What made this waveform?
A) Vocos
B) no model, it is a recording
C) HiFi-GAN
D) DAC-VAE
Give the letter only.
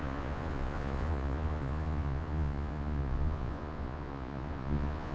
A